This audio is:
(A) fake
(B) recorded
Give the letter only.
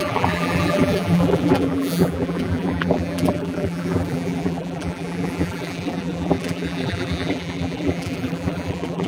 A